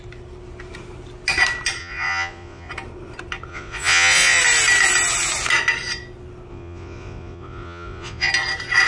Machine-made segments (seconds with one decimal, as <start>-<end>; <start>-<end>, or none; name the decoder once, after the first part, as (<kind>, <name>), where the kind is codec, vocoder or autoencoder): 1.8-2.7 (vocoder, Vocos); 3.5-4.4; 6.5-8.3